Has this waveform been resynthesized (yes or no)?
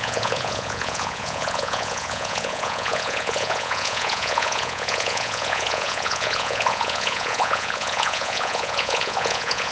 yes